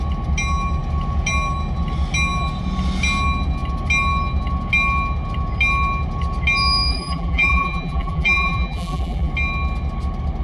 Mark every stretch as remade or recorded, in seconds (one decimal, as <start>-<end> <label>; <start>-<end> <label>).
0.0-6.9 recorded; 6.9-9.3 remade; 9.3-10.4 recorded